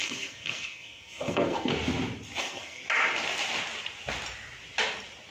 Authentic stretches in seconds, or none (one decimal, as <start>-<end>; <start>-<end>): 1.7-2.4; 2.8-5.3